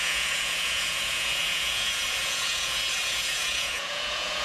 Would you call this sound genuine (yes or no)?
no